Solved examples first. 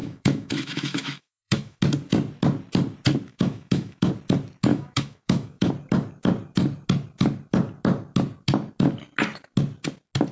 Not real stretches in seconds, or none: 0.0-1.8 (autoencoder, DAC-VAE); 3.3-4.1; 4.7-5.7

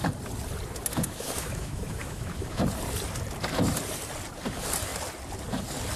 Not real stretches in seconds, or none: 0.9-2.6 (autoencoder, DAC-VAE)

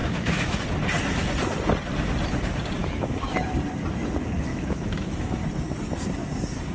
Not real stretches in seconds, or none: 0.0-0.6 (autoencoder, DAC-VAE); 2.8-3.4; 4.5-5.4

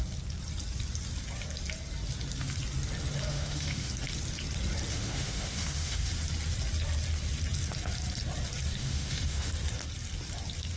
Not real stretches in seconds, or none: 3.3-3.9 (autoencoder, DAC-VAE); 4.9-6.1; 8.8-9.5